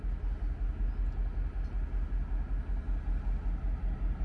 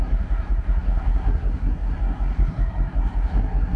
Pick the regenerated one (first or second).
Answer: second